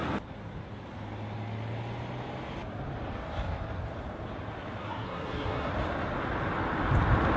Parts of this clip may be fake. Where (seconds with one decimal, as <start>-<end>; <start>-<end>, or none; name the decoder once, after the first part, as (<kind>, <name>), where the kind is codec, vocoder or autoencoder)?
4.8-5.7 (codec, SNAC)